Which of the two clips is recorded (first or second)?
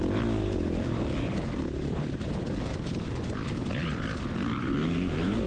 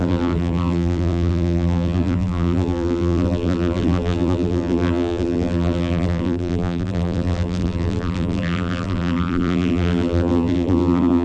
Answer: first